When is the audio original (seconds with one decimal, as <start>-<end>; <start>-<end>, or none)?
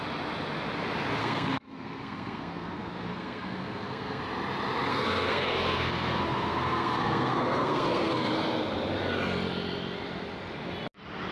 0.0-1.2; 4.2-4.9; 8.3-11.3